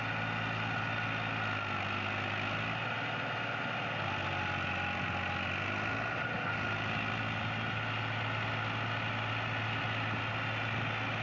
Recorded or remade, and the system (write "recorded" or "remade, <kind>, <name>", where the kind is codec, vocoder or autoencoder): recorded